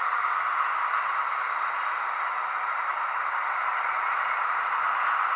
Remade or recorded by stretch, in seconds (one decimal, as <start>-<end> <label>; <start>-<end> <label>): 0.0-5.4 recorded